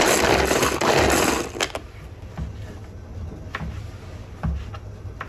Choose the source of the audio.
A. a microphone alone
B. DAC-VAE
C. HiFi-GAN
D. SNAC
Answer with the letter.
A